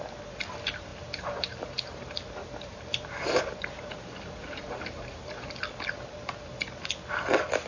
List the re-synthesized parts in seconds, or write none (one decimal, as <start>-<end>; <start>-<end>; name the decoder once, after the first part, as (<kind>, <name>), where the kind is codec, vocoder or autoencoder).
0.9-5.5 (vocoder, BigVGAN v2)